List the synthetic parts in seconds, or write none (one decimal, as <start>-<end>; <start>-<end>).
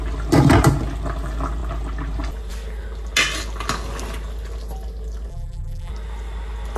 5.3-5.9